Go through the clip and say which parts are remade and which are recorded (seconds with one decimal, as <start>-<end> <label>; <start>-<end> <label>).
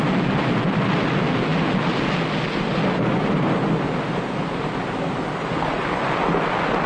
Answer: 0.0-6.9 recorded